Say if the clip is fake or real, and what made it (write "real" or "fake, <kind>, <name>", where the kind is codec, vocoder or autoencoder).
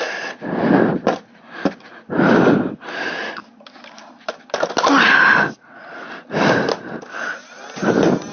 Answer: real